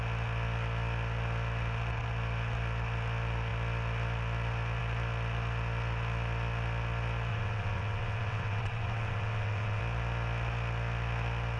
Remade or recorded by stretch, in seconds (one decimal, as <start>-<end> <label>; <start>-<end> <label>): 0.0-7.3 recorded; 7.3-9.8 remade; 9.8-11.6 recorded